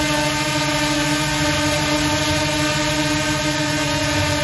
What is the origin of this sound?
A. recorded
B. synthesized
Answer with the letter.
A